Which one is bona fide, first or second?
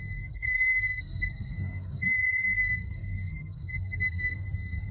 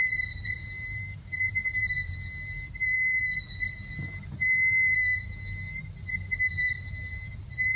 second